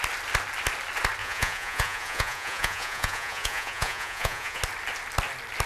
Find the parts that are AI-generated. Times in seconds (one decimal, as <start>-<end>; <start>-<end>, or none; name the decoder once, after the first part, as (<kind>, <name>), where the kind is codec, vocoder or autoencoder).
1.2-4.6 (vocoder, Vocos)